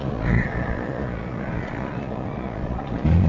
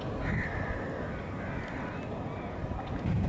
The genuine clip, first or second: second